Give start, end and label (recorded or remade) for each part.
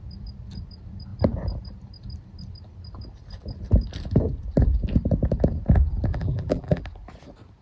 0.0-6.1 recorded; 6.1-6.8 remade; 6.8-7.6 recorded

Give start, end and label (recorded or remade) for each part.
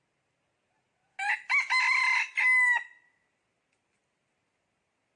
0.0-5.2 recorded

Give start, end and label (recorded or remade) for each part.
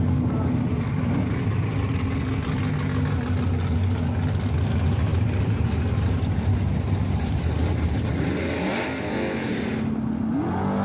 0.0-5.1 recorded; 5.1-8.3 remade; 8.3-10.8 recorded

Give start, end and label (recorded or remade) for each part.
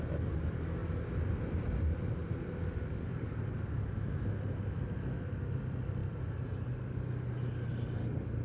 0.0-2.2 recorded; 2.2-3.5 remade; 3.5-6.0 recorded; 6.0-6.7 remade; 6.7-8.4 recorded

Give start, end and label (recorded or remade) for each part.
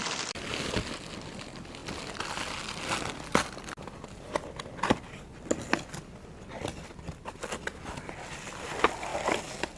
0.0-9.8 recorded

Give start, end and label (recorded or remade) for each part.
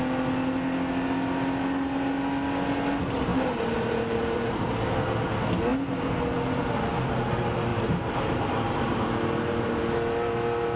0.0-3.3 recorded; 3.3-4.7 remade; 4.7-7.7 recorded; 7.7-9.8 remade; 9.8-10.8 recorded